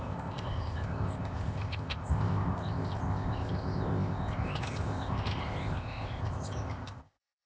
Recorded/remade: remade